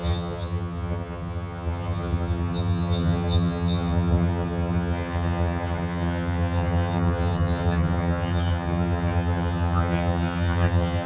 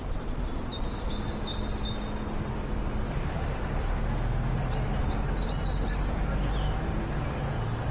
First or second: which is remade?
first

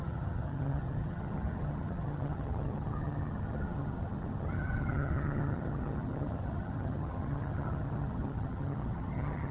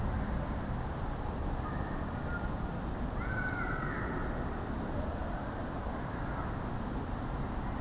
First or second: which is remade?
first